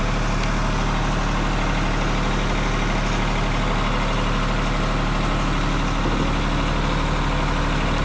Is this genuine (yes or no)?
yes